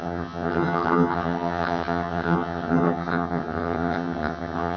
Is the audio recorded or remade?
remade